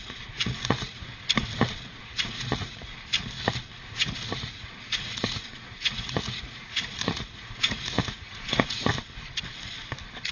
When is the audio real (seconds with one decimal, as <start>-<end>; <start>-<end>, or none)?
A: 1.1-1.8; 2.9-3.9; 8.9-10.3